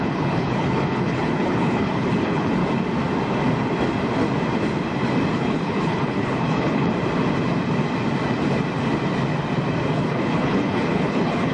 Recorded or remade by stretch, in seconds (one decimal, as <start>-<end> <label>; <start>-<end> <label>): 0.0-2.6 remade; 2.6-5.3 recorded; 5.3-6.9 remade; 6.9-9.9 recorded; 9.9-11.5 remade